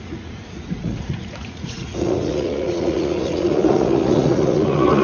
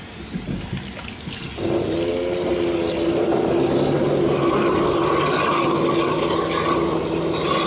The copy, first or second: first